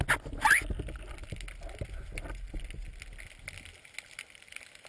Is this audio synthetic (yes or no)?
no